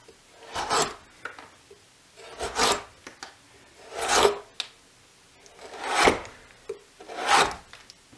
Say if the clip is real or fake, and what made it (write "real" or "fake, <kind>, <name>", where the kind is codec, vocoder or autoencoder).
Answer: real